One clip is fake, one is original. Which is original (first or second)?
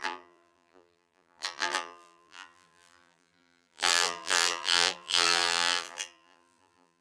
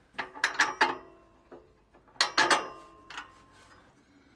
second